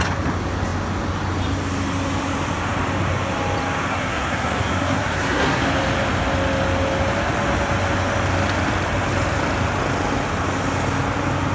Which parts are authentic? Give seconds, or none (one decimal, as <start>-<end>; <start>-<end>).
0.0-3.9; 5.6-11.5